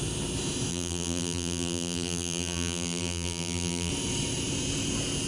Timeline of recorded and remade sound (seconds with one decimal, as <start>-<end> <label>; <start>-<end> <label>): 0.0-0.7 recorded; 0.7-3.9 remade; 3.9-5.3 recorded